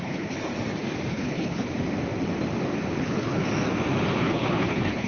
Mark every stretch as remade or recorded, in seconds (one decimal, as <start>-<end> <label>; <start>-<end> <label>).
0.0-0.5 remade; 0.5-1.1 recorded; 1.1-1.7 remade; 1.7-3.0 recorded; 3.0-3.4 remade; 3.4-4.2 recorded; 4.2-5.1 remade